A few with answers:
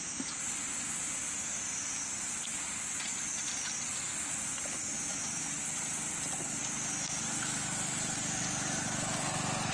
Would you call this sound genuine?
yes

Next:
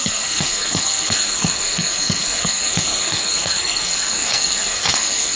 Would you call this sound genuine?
no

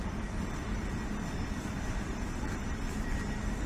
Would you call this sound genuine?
yes